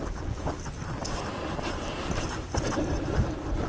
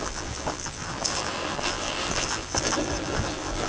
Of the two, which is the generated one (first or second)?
second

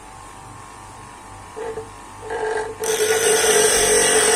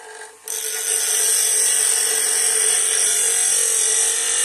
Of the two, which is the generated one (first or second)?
first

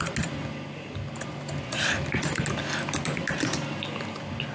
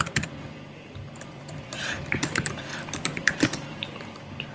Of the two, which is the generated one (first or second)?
second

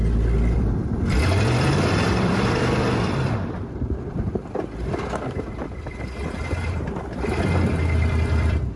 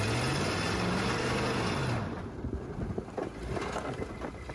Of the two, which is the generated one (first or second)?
first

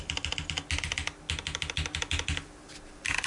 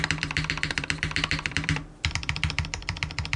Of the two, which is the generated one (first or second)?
second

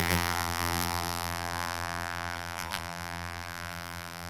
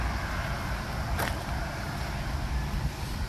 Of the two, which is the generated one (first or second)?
first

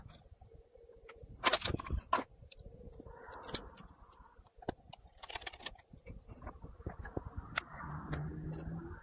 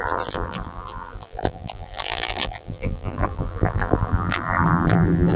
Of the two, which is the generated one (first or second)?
second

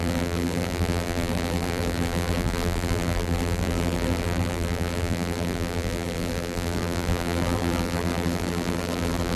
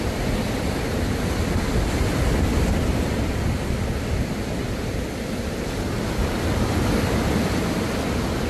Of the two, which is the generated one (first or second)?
first